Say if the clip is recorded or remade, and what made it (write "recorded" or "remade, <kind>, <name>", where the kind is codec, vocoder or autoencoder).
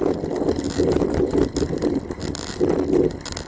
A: recorded